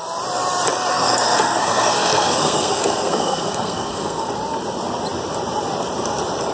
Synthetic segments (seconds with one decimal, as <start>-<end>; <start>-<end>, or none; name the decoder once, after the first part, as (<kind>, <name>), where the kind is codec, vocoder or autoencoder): 0.9-4.3 (codec, SNAC)